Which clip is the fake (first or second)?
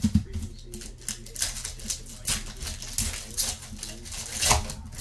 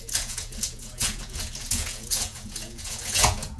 second